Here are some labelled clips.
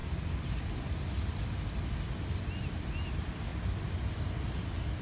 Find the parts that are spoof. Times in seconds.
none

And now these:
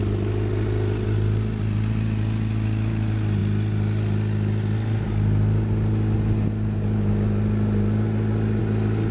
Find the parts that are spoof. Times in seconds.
none

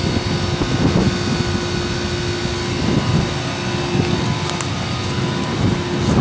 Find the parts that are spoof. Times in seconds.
none

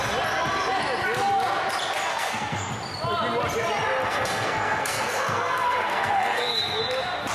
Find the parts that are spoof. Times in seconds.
2.1-2.7 (codec, SNAC); 4.0-6.8

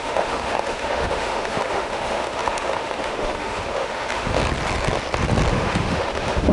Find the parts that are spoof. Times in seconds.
0.0-4.4 (autoencoder, DAC-VAE); 5.5-6.5

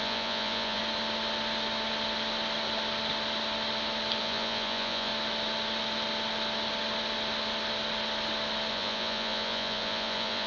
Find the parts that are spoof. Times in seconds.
0.0-0.8 (vocoder, Vocos); 4.2-5.1; 8.7-10.5

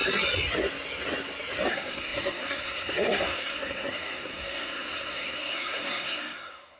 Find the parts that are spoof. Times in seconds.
1.7-6.8 (codec, SNAC)

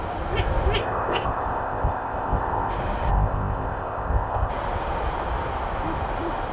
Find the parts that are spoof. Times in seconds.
0.8-2.7 (codec, ZipCodec); 3.1-4.5